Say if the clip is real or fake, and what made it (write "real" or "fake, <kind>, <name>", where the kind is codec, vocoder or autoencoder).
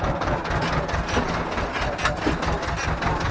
real